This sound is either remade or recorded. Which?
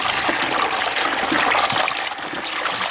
recorded